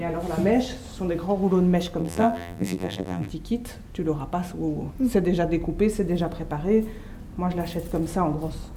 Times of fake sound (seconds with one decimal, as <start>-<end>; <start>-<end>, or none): 2.0-3.3